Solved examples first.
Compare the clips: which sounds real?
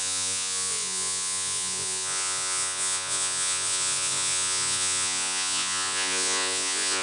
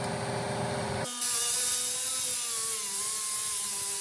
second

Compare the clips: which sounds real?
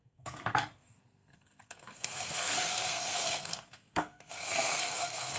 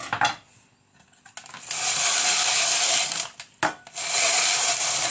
second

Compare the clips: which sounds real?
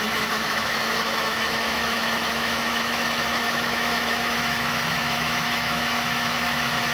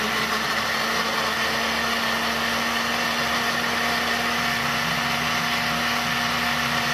second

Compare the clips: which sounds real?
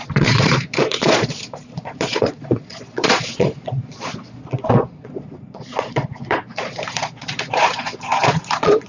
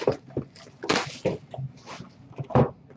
second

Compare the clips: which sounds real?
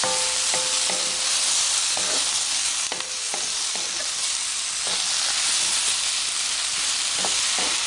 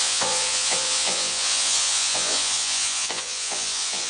first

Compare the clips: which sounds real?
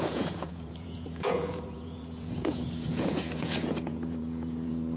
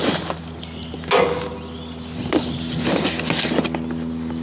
second